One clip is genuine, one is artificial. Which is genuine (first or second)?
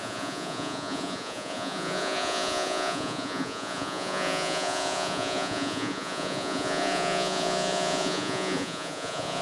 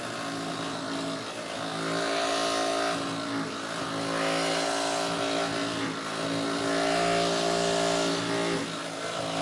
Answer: second